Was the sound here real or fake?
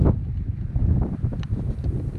real